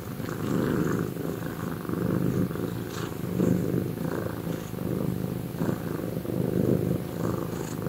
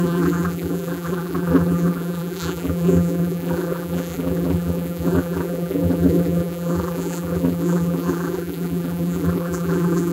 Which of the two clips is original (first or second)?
first